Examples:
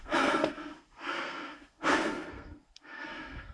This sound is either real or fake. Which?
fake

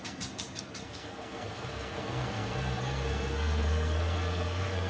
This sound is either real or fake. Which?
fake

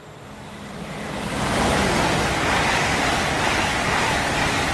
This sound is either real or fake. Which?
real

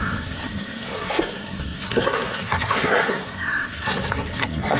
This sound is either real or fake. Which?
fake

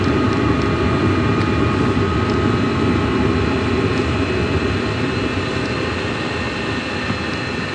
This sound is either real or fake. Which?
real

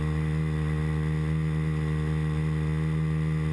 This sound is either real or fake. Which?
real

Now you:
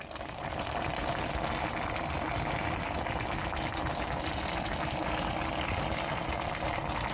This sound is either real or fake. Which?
real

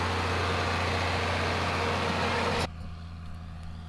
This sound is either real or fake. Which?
real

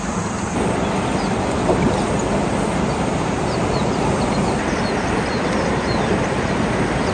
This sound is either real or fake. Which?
real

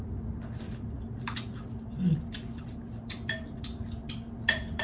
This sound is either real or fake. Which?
real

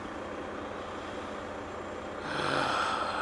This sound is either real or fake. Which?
real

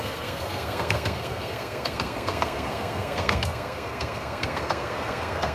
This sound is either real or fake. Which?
fake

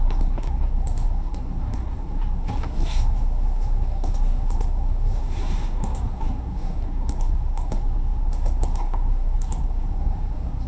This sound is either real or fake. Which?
fake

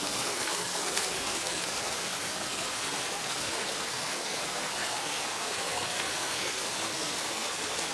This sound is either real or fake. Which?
fake